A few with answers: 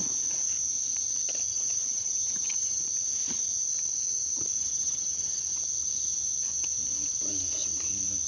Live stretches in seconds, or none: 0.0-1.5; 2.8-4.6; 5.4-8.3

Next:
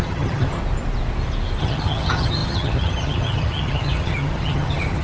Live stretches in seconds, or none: 0.6-1.6

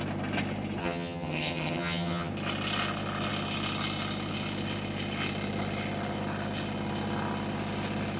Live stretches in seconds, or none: 0.0-0.8; 2.3-8.2

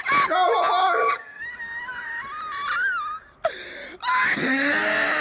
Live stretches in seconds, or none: 0.0-0.8; 1.4-5.2

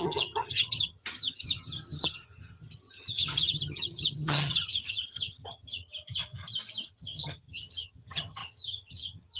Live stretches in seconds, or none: 5.9-6.9

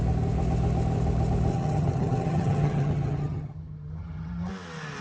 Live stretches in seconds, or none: 0.0-1.5; 4.5-5.0